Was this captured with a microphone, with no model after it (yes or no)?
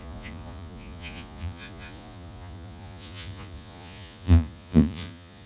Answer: no